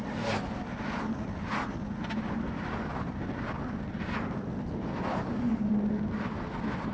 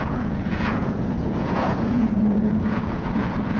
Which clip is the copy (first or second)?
second